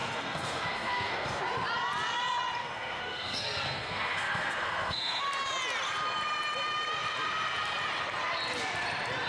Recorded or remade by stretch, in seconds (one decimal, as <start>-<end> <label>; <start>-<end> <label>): 0.0-1.4 remade; 1.4-2.6 recorded; 2.6-5.2 remade; 5.2-9.3 recorded